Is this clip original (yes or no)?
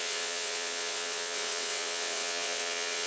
no